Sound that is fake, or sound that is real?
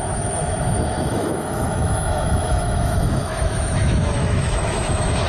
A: fake